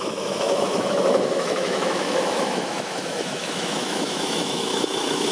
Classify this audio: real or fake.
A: fake